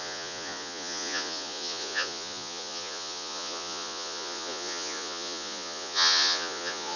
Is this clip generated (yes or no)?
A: yes